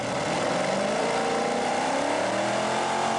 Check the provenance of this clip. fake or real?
real